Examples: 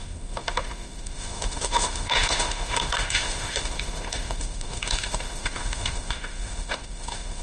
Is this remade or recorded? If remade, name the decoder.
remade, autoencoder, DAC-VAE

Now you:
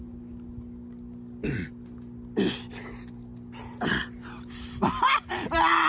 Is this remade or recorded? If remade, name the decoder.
recorded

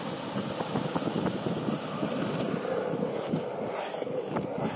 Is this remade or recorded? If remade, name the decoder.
recorded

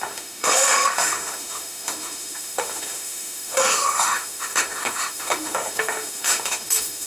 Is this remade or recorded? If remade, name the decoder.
remade, autoencoder, DAC-VAE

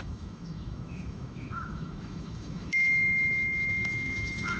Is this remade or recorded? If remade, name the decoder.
remade, autoencoder, DAC-VAE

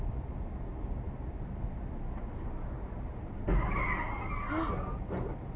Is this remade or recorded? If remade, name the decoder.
recorded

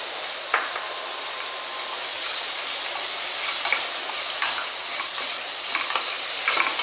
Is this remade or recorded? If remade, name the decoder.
recorded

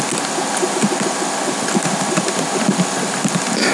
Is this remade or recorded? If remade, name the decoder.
recorded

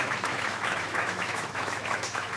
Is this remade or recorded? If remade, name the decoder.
remade, autoencoder, DAC-VAE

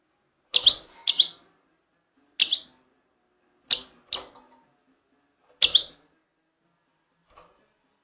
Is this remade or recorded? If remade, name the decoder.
recorded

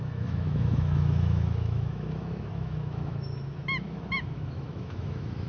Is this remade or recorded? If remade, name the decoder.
remade, autoencoder, DAC-VAE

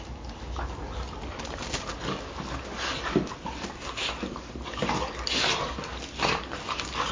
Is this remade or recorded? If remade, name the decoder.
recorded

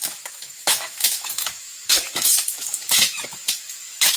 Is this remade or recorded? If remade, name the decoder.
remade, autoencoder, DAC-VAE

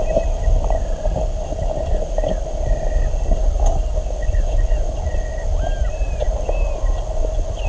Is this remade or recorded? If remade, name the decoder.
recorded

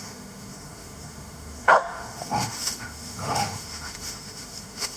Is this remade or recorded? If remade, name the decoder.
remade, autoencoder, DAC-VAE